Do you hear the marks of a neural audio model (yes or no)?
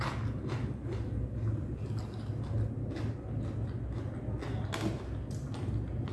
no